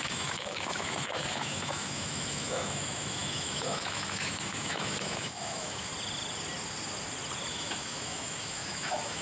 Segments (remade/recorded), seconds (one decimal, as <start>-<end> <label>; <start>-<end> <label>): 0.0-5.9 remade; 5.9-7.5 recorded; 7.5-9.2 remade